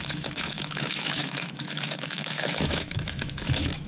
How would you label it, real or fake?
fake